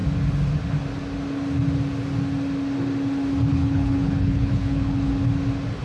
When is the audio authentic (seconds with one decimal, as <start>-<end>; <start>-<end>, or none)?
0.0-3.5; 5.1-5.8